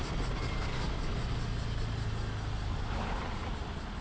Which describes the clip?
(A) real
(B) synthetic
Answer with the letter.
A